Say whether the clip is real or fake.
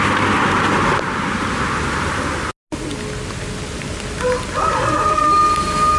real